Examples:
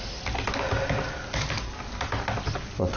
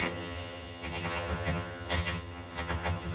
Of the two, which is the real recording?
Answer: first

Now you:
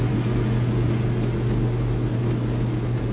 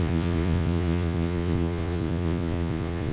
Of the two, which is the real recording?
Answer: first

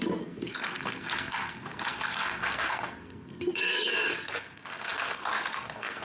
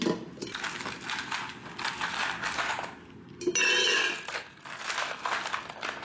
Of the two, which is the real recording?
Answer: second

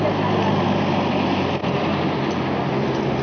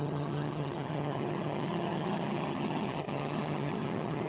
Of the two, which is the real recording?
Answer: first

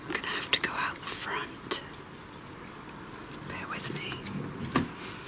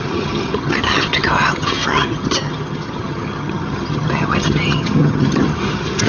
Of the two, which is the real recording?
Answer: first